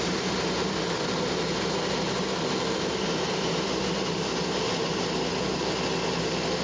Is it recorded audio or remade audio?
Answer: recorded